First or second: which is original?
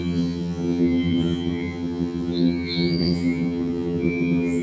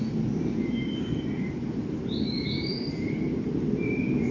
second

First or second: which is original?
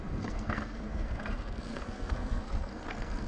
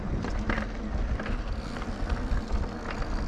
second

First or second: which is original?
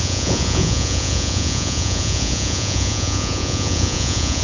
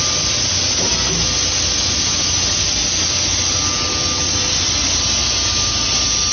second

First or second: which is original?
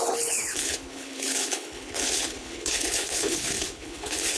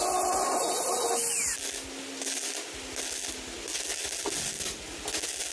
second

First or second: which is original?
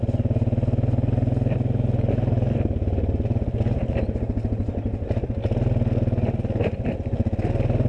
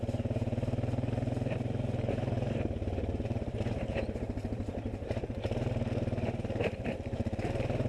first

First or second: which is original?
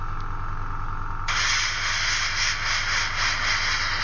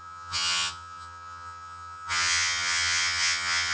first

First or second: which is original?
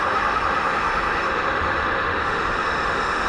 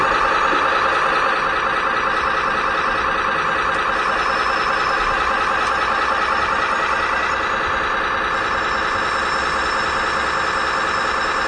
second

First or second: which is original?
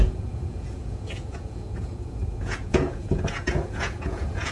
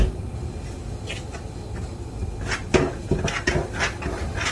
second